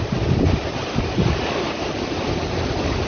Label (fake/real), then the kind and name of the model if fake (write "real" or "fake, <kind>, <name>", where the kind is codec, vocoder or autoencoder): real